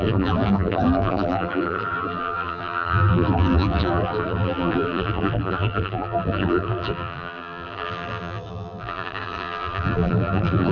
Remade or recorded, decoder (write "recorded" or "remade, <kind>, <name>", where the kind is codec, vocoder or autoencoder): remade, vocoder, BigVGAN v2